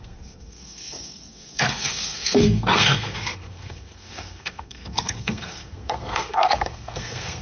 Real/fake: fake